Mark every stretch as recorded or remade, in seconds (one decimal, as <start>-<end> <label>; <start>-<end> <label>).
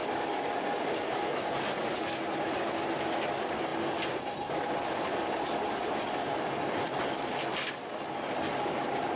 0.0-9.2 recorded